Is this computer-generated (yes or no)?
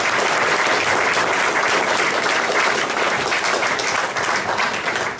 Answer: no